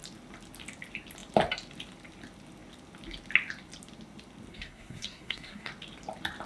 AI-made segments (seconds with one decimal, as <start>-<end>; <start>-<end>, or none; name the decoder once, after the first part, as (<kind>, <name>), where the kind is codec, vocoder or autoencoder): 4.5-5.7 (codec, SNAC)